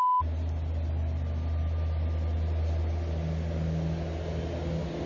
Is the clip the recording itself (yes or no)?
yes